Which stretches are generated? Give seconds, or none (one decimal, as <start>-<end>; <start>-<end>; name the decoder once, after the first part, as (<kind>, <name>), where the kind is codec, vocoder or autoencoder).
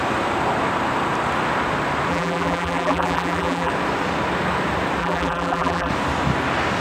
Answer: 2.1-3.7 (vocoder, BigVGAN v2); 5.0-5.9